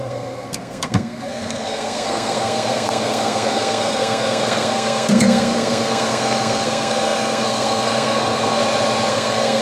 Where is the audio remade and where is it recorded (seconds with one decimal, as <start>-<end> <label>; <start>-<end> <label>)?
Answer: 0.0-8.6 remade; 8.6-9.1 recorded; 9.1-9.6 remade